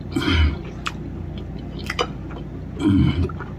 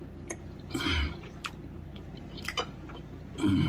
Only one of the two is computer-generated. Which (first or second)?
second